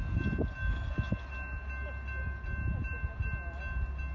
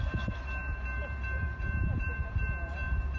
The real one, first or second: first